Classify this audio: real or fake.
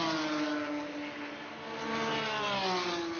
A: real